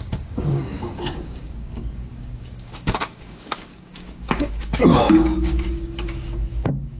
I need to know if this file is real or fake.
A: fake